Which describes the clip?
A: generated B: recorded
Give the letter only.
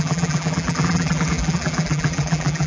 A